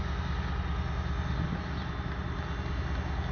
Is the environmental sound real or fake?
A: real